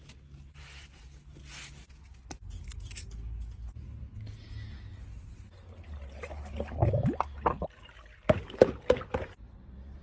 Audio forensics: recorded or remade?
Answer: recorded